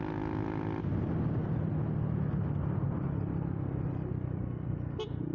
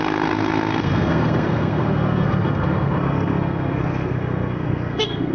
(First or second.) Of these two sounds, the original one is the first